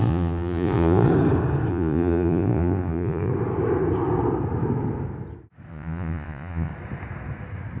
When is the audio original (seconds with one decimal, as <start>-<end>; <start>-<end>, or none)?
1.1-1.7; 3.3-5.7; 6.7-7.8